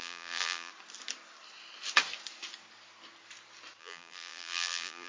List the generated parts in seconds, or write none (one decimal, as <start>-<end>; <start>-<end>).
0.0-0.7; 3.8-5.1